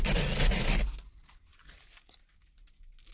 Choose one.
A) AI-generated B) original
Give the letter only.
B